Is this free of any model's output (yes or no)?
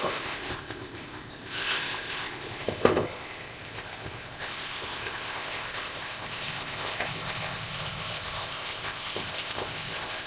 no